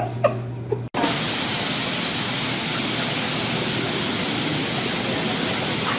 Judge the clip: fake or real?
real